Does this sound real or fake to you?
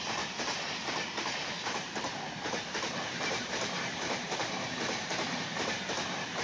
fake